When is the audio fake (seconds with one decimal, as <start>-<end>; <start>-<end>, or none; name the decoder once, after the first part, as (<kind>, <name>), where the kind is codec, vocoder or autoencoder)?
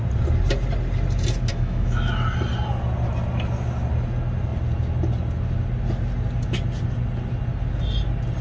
1.5-2.1 (autoencoder, DAC-VAE)